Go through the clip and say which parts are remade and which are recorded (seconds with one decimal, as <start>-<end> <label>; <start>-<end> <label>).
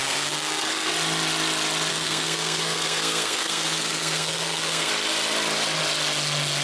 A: 0.0-0.9 remade; 0.9-1.9 recorded; 1.9-4.9 remade; 4.9-6.6 recorded